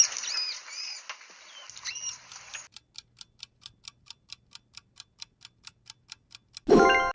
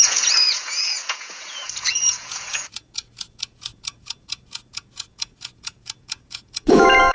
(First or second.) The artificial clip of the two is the second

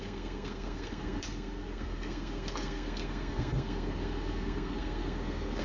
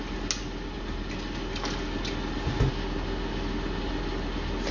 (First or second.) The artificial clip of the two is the first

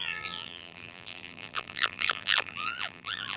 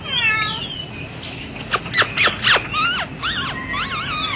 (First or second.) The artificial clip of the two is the first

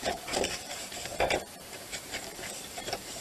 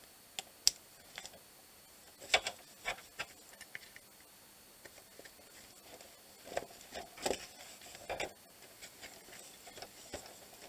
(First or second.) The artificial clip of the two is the first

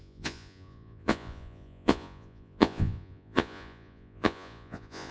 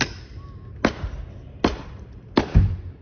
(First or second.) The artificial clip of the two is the first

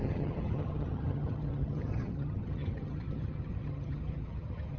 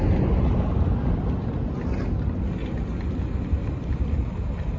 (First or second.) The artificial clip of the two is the first